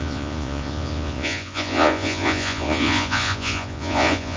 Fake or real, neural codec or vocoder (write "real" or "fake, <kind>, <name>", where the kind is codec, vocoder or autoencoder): fake, vocoder, Vocos